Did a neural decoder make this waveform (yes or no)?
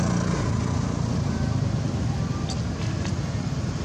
no